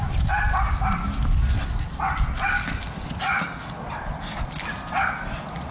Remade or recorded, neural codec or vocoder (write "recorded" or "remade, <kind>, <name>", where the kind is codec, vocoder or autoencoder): recorded